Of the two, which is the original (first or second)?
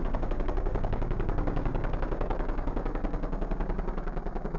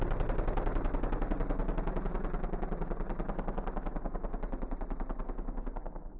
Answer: second